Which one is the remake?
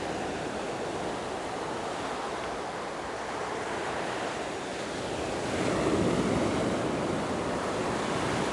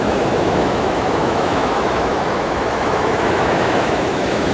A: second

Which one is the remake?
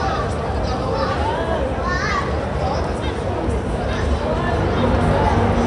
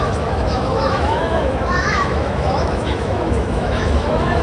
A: second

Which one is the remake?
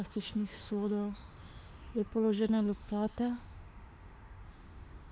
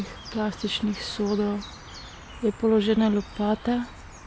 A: first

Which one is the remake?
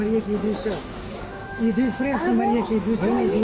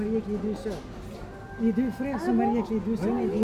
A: first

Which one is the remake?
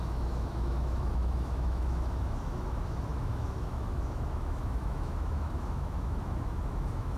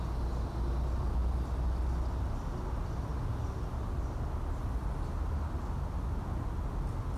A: first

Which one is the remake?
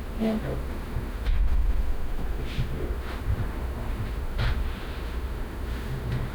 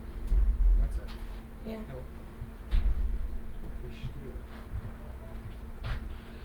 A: first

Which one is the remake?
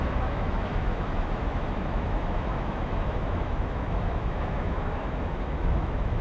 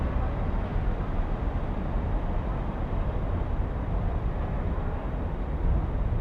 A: first